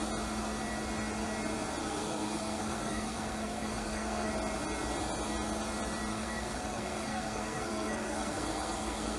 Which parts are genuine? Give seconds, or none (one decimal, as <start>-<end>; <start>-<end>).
0.0-1.8; 4.3-6.1